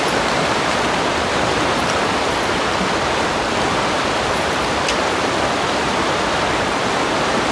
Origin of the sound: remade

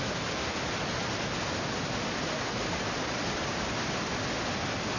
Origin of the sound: recorded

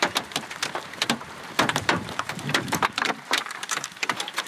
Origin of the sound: remade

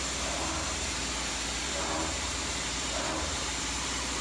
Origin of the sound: remade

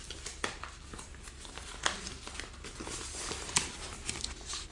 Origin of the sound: remade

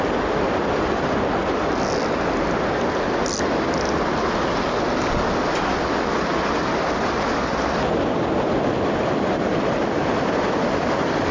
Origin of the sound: recorded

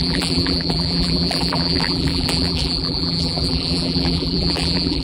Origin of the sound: remade